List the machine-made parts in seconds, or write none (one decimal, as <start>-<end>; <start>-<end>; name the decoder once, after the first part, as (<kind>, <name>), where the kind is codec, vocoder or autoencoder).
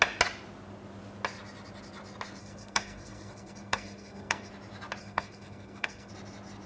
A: 2.4-4.5 (codec, SNAC); 5.0-6.1